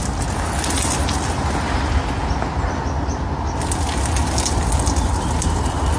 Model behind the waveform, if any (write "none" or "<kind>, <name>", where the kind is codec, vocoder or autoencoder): none